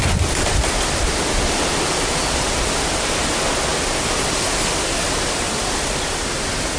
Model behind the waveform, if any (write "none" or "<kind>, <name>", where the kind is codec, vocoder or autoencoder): none